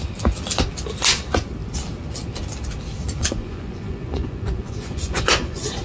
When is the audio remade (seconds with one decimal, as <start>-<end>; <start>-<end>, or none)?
3.2-5.8